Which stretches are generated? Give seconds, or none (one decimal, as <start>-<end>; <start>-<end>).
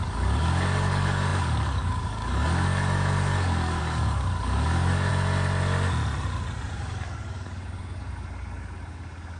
0.0-5.1; 6.7-9.4